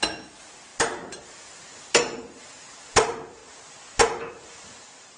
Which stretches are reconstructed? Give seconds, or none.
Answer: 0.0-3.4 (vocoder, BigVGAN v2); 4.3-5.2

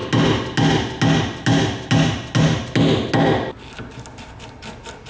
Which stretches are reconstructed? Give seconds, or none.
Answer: none

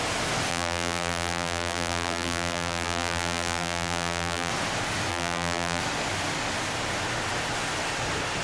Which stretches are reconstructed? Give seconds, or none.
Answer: 0.5-4.5 (vocoder, BigVGAN v2); 5.1-5.8

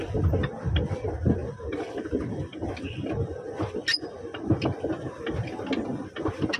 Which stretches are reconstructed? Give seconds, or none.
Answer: none

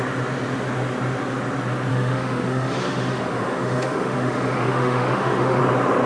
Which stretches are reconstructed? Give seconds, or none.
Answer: 1.9-5.6 (autoencoder, DAC-VAE)